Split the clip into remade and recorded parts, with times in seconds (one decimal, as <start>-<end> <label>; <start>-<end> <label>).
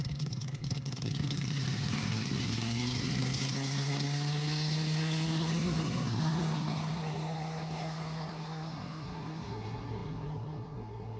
0.0-11.2 remade